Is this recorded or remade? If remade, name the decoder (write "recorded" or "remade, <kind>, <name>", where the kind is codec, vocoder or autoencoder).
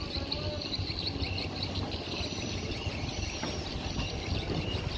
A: recorded